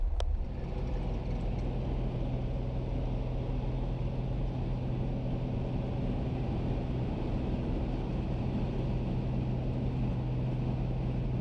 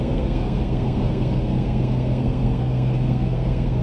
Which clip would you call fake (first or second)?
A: second